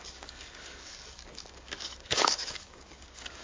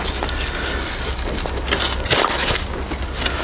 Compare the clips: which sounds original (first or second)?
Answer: second